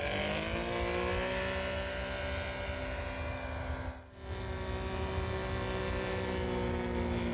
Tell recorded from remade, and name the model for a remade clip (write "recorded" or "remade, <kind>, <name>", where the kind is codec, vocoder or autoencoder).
recorded